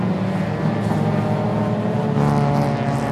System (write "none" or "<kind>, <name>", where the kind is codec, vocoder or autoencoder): none